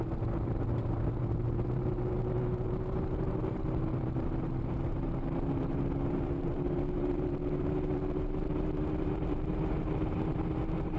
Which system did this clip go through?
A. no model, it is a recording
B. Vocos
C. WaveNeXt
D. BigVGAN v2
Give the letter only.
D